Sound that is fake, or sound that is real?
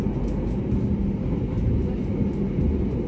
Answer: real